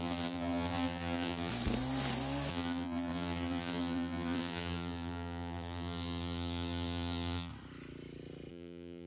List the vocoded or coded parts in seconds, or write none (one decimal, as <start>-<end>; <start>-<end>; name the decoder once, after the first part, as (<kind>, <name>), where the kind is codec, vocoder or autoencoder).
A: 0.0-1.5 (vocoder, BigVGAN v2); 2.5-7.5; 8.5-9.1